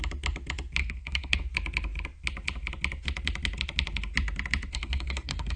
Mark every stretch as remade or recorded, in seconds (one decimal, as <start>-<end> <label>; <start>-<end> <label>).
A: 0.0-0.8 recorded; 0.8-1.4 remade; 1.4-4.7 recorded; 4.7-5.6 remade